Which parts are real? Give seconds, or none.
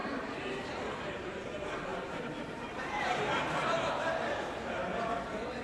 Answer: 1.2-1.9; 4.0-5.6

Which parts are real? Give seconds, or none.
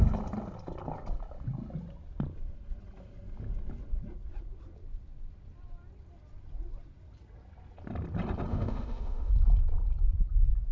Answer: 0.0-8.5; 9.3-10.7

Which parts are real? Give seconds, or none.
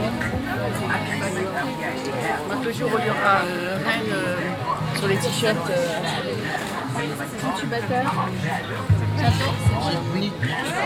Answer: 0.0-3.2; 3.9-6.4; 7.2-10.9